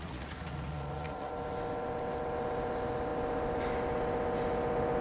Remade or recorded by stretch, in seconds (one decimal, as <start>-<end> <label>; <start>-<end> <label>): 0.0-1.3 remade; 1.3-5.0 recorded